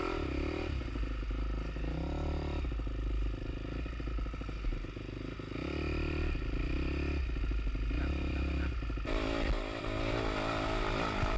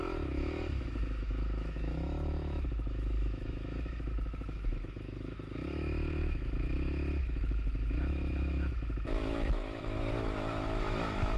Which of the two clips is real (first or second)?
first